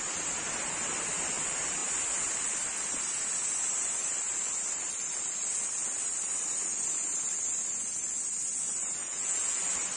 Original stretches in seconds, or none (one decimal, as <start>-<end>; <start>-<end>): 0.0-9.0; 9.6-10.0